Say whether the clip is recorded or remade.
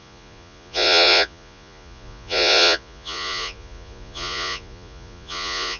remade